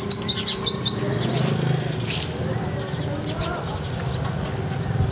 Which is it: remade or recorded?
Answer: recorded